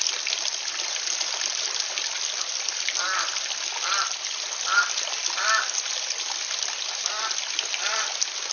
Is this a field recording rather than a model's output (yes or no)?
yes